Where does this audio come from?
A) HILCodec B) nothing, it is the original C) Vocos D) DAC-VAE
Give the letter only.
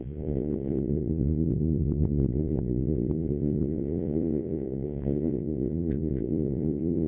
C